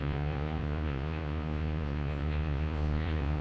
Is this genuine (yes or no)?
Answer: no